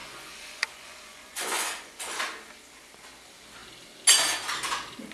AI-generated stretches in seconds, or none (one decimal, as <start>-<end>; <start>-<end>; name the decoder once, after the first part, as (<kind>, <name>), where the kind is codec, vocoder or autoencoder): 0.0-2.2 (vocoder, Vocos)